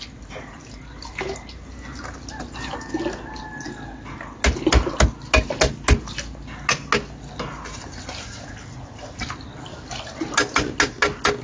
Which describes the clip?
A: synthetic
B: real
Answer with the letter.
B